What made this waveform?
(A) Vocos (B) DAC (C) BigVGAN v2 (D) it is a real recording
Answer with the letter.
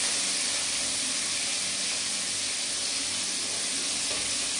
D